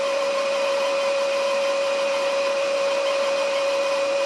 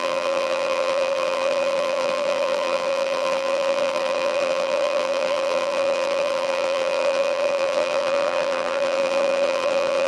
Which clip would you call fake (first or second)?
second